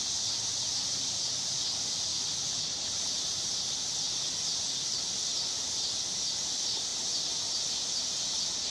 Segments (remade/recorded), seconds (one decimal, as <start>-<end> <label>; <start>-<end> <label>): 0.0-8.7 recorded